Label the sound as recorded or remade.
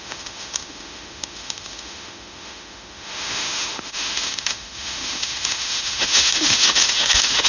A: remade